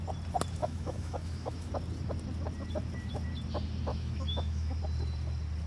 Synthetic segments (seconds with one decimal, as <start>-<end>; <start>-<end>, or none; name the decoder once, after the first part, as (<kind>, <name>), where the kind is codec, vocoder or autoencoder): 0.6-1.7 (autoencoder, DAC-VAE); 3.9-4.8